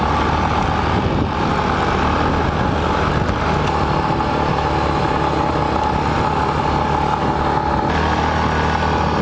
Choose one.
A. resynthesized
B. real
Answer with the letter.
B